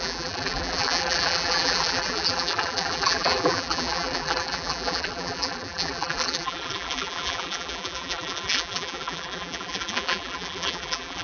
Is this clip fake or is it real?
fake